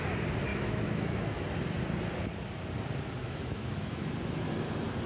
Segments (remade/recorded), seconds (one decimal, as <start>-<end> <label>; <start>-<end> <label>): 0.0-0.5 recorded; 0.5-1.4 remade; 1.4-3.2 recorded; 3.2-4.1 remade; 4.1-5.1 recorded

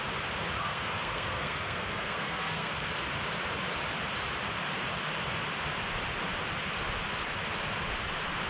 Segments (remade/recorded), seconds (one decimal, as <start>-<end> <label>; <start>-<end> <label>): 0.0-0.6 recorded; 0.6-2.7 remade; 2.7-8.5 recorded

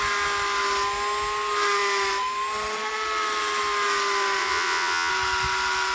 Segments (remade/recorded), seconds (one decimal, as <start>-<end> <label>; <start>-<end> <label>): 0.0-4.4 recorded; 4.4-5.1 remade; 5.1-5.9 recorded

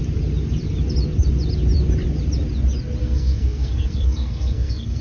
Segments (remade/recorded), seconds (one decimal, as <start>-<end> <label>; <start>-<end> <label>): 0.0-3.0 recorded; 3.0-5.0 remade